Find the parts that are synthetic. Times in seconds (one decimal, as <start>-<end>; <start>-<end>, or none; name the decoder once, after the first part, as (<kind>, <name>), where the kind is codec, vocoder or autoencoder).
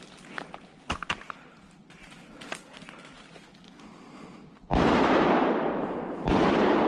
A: 1.0-1.6 (vocoder, BigVGAN v2)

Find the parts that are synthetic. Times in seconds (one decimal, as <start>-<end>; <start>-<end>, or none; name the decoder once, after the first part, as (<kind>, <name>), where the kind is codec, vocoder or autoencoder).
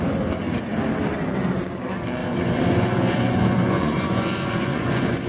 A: 2.2-5.3 (vocoder, Vocos)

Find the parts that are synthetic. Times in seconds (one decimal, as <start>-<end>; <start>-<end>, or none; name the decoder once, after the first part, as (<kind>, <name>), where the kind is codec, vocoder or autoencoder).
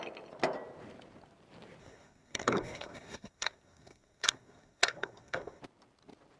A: 1.8-5.6 (codec, SNAC)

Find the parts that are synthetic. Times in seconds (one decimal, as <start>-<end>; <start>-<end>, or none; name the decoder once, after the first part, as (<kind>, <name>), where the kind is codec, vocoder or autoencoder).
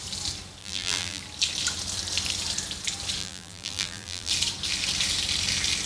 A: 0.6-1.2 (vocoder, BigVGAN v2); 3.2-4.3